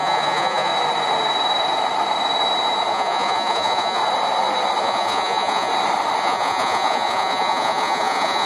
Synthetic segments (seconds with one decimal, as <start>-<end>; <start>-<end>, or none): 0.0-0.7; 2.9-4.0; 4.8-5.7; 6.2-8.5